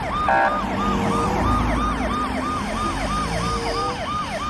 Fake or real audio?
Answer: real